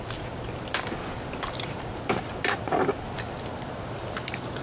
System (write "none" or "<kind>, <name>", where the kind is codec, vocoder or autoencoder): vocoder, BigVGAN v2